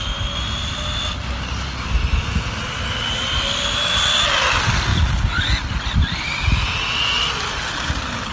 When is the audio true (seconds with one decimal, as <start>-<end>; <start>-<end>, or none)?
0.0-8.3